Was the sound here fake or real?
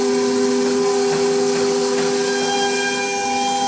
real